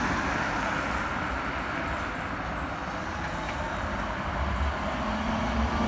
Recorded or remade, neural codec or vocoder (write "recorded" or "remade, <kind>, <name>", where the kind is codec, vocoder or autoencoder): recorded